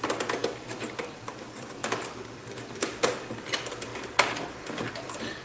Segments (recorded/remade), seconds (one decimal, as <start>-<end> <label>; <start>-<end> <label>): 0.0-5.4 remade